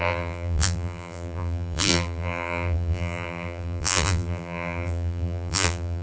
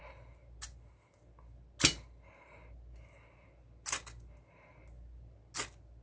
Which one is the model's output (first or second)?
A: first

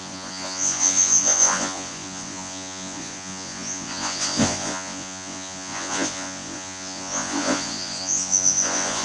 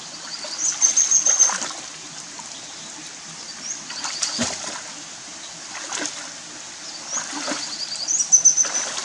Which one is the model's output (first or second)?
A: first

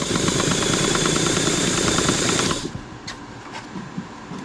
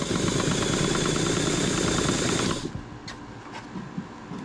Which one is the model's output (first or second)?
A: first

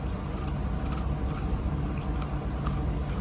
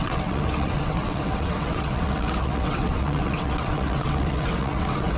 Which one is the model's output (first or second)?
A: second